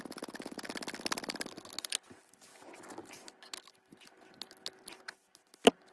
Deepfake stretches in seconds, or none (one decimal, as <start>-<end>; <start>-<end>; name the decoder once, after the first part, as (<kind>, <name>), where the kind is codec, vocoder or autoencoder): none